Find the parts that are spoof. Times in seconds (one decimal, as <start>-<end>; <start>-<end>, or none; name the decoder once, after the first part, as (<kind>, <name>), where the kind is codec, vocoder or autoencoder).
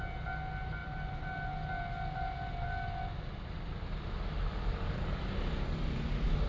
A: none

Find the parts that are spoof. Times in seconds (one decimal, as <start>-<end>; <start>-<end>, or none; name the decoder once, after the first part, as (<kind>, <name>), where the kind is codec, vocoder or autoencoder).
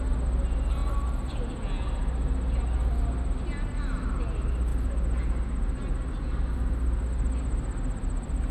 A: none